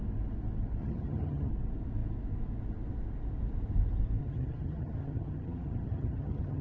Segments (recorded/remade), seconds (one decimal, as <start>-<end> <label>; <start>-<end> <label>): 0.0-0.8 recorded; 0.8-1.5 remade; 1.5-4.2 recorded; 4.2-6.6 remade